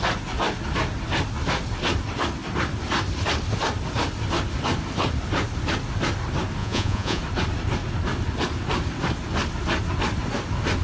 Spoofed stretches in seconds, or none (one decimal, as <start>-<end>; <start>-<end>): 6.6-7.2